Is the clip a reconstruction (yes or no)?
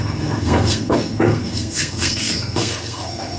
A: yes